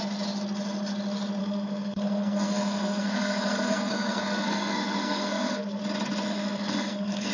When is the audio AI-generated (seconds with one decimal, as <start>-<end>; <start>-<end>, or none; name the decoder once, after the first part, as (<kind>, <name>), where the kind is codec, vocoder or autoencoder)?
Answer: 1.4-5.8 (codec, SNAC); 6.3-7.3